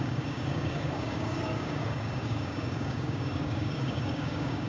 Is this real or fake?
fake